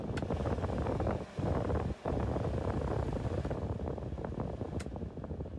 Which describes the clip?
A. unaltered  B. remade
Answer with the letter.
A